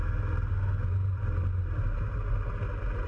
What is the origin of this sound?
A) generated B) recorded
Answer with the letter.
B